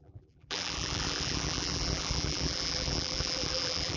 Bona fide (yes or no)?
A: no